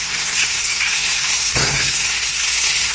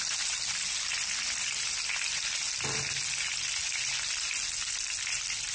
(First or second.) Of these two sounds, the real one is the second